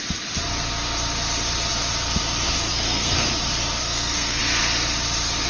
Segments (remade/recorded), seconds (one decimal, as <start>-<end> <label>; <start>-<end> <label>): 0.0-2.7 recorded; 2.7-3.3 remade; 3.3-3.8 recorded; 3.8-4.4 remade; 4.4-5.5 recorded